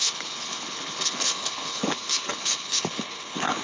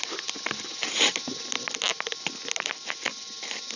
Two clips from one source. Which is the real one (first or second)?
second